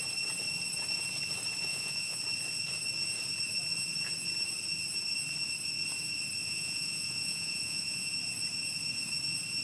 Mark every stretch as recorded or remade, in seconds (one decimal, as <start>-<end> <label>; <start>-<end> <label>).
0.0-1.7 recorded; 1.7-2.2 remade; 2.2-6.4 recorded; 6.4-8.1 remade; 8.1-9.6 recorded